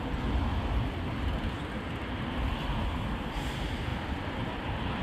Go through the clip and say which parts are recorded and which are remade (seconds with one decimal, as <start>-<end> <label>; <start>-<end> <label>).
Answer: 0.0-5.0 recorded